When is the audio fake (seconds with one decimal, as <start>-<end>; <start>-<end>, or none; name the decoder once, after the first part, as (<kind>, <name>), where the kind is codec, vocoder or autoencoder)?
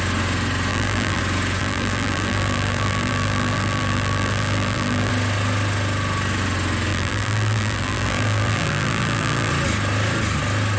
0.7-1.2 (vocoder, BigVGAN v2); 1.6-5.1; 6.9-9.5